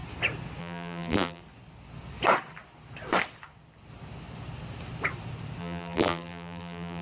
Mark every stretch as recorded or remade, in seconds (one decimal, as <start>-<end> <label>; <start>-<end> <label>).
0.0-0.6 recorded; 0.6-1.4 remade; 1.4-5.6 recorded; 5.6-7.0 remade